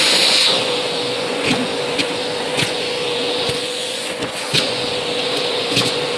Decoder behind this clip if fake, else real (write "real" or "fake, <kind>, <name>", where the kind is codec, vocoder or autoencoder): fake, vocoder, Vocos